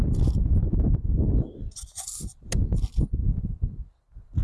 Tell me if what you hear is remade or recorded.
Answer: recorded